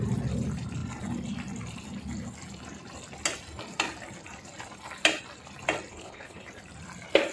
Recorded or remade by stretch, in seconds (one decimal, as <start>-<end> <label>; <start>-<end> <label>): 0.0-5.9 recorded; 5.9-6.5 remade; 6.5-7.3 recorded